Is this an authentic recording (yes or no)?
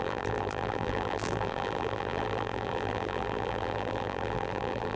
no